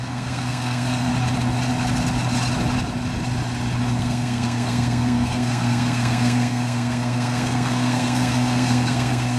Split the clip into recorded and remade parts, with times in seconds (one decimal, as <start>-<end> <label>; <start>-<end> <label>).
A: 0.0-1.1 remade; 1.1-4.0 recorded; 4.0-9.4 remade